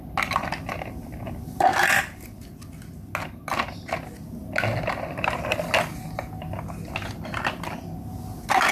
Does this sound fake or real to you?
real